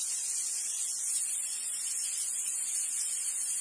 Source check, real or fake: real